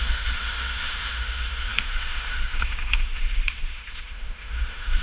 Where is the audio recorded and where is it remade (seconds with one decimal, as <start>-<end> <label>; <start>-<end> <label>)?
0.0-5.0 remade